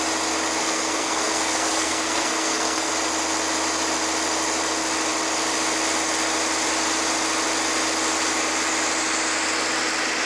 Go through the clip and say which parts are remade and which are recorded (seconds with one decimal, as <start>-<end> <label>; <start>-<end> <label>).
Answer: 0.0-0.6 recorded; 0.6-2.9 remade; 2.9-10.3 recorded